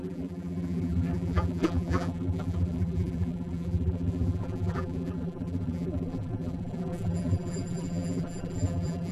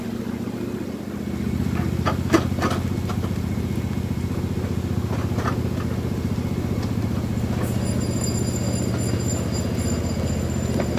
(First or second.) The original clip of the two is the second